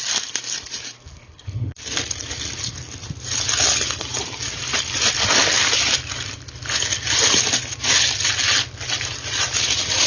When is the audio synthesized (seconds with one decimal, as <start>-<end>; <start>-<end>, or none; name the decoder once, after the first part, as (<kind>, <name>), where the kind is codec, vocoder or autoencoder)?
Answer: 1.1-1.8 (codec, SNAC)

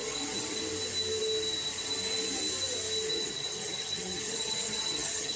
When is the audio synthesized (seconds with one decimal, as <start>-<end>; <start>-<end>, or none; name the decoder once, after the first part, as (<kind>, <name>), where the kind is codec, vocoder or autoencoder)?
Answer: 0.0-0.6 (vocoder, HiFi-GAN); 3.1-5.4

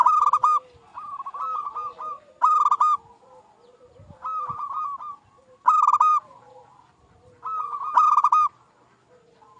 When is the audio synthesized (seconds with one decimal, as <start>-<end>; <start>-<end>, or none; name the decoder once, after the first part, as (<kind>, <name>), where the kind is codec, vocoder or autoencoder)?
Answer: none